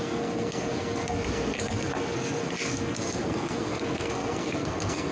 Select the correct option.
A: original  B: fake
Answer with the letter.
B